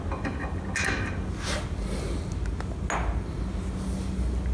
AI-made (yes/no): no